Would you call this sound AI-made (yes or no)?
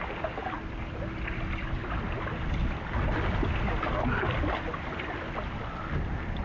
no